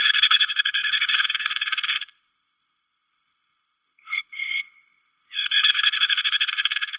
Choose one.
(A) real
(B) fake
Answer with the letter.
B